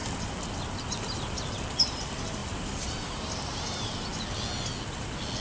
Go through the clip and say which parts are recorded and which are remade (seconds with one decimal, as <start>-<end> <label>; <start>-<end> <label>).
0.0-1.0 recorded; 1.0-4.1 remade; 4.1-5.4 recorded